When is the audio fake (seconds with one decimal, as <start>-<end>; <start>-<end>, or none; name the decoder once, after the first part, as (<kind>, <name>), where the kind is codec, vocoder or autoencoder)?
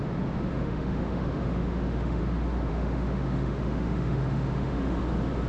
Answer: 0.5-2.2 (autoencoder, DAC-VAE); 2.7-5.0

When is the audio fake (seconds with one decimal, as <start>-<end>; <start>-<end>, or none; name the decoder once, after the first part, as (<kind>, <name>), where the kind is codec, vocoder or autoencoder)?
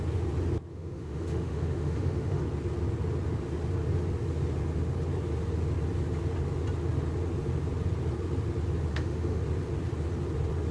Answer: 0.7-2.4 (autoencoder, DAC-VAE); 8.9-9.4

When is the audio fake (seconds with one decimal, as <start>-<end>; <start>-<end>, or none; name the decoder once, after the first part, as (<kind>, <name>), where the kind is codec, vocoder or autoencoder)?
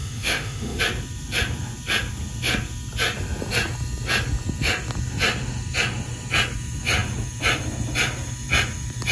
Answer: 0.0-0.8 (autoencoder, DAC-VAE)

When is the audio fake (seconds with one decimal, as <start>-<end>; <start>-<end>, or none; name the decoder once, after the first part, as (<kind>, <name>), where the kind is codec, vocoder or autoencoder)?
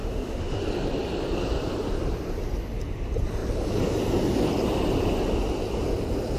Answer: 0.0-0.6 (autoencoder, DAC-VAE)